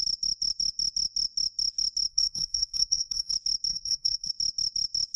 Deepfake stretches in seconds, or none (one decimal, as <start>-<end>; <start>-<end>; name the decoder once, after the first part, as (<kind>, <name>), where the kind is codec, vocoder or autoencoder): 2.1-3.3 (codec, SNAC); 3.7-4.3

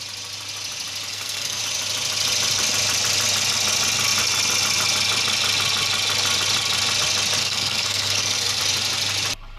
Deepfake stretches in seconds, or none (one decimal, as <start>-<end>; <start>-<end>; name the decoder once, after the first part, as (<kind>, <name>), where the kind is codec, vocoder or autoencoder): 1.1-1.6 (codec, SNAC); 7.4-8.6

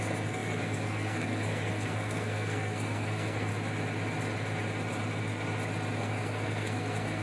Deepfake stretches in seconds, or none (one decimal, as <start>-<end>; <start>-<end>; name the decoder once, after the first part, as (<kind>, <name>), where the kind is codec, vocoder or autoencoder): 0.0-3.5 (codec, SNAC); 6.0-7.2

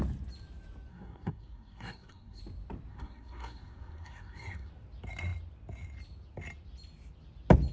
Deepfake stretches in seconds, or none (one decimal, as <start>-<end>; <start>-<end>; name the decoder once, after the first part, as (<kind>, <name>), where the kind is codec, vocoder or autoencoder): 0.9-2.4 (codec, SNAC); 2.9-4.7

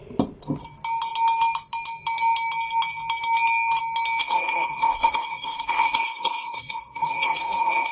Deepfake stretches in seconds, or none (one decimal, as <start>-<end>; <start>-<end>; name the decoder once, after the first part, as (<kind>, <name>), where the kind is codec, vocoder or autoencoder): 4.2-7.9 (codec, SNAC)